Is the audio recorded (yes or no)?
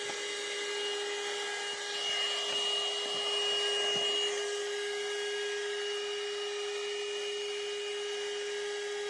yes